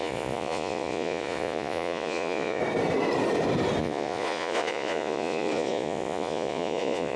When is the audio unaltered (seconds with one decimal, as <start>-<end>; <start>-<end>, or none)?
2.6-3.8